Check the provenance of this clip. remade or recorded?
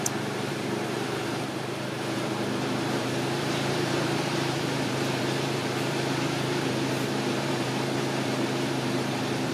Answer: remade